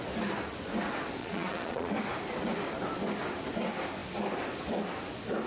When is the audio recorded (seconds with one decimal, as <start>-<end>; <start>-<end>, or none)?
0.0-1.2; 1.9-5.5